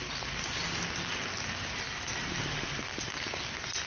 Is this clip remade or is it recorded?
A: recorded